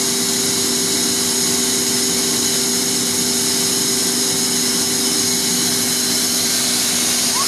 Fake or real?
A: real